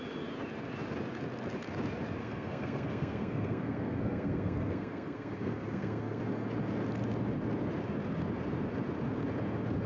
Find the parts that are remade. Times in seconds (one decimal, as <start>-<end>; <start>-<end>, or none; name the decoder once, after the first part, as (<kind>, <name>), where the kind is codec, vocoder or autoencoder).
2.2-6.2 (codec, SNAC)